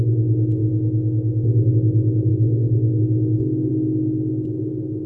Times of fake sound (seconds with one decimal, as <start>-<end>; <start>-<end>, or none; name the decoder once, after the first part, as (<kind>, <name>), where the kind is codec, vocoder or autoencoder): 2.3-3.0 (codec, DAC)